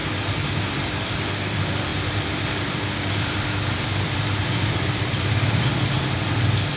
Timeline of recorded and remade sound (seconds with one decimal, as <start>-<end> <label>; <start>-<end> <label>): 0.0-0.6 recorded; 0.6-6.8 remade